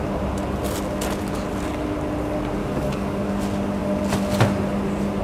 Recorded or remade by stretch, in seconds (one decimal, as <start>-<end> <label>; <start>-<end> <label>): 0.0-2.6 recorded; 2.6-3.4 remade; 3.4-5.2 recorded